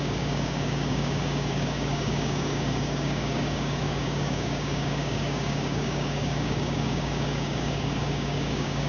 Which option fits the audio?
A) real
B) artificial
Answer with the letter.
B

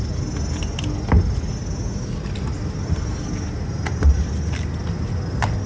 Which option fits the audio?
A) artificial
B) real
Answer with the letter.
B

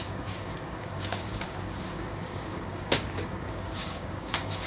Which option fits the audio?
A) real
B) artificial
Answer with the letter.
B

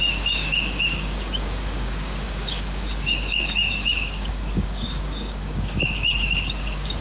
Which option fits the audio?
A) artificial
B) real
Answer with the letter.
A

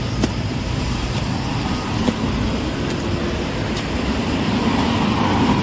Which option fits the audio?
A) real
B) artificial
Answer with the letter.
A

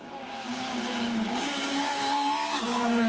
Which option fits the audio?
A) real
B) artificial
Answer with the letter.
B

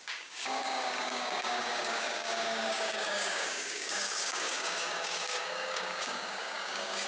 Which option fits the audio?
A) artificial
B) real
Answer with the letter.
A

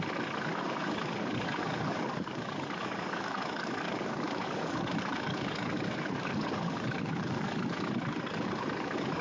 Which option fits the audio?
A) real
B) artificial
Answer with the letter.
B